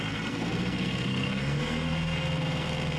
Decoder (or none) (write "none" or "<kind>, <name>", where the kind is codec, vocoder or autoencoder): codec, SNAC